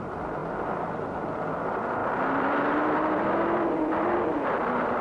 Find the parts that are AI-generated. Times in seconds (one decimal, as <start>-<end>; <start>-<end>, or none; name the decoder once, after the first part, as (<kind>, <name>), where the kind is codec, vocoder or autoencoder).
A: 0.0-5.0 (vocoder, BigVGAN v2)